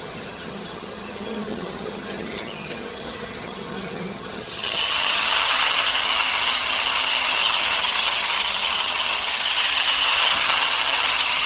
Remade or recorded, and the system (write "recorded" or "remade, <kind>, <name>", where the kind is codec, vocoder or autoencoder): remade, vocoder, HiFi-GAN